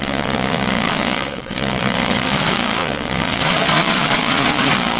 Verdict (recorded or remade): remade